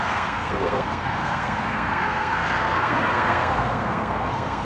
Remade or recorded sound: remade